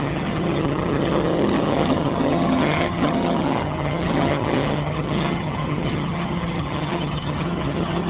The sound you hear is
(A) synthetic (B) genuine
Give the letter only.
A